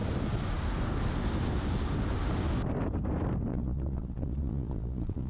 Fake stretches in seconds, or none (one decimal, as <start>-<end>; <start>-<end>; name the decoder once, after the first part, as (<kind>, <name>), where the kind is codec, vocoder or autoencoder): 3.5-5.3 (vocoder, Vocos)